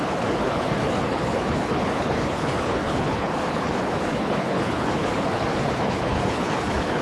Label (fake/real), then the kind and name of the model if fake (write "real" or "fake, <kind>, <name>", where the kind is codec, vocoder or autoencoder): fake, codec, HILCodec